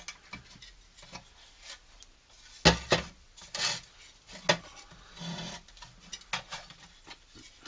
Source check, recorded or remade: recorded